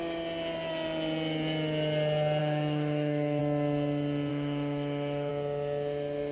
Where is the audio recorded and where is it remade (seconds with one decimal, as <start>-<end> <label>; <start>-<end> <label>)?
0.0-2.4 recorded; 2.4-3.4 remade; 3.4-4.3 recorded; 4.3-5.3 remade; 5.3-6.3 recorded